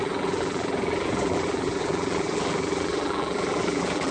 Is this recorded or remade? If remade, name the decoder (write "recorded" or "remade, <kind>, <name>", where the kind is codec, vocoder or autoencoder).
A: remade, vocoder, BigVGAN v2